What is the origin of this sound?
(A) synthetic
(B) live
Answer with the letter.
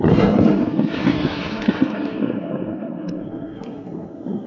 A